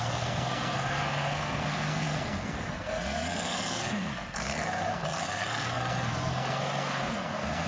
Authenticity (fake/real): fake